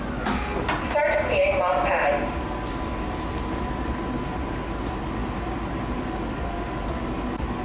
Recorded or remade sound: recorded